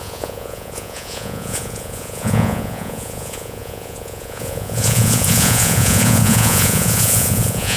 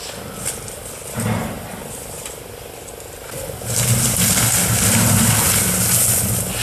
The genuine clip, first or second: second